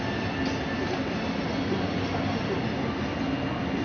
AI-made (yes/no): no